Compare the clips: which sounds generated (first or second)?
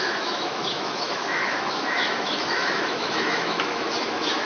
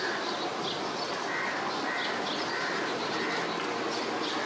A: first